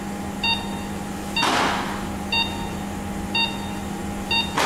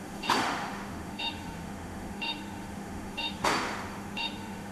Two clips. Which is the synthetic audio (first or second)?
second